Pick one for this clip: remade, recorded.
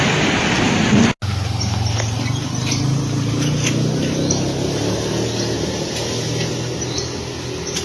recorded